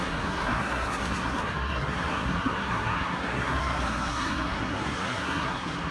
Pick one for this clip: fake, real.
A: fake